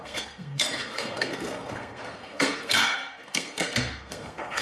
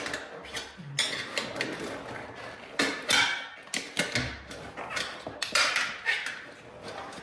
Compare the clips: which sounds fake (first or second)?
first